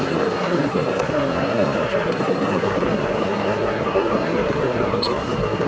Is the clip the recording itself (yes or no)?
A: no